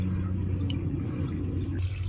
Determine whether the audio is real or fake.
real